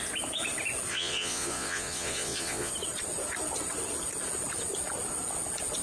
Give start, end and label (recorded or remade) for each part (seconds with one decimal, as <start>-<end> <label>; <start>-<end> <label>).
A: 0.0-0.9 recorded; 0.9-2.7 remade; 2.7-5.8 recorded